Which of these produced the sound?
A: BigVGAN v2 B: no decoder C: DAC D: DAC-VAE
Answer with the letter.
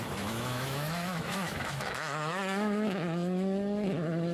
D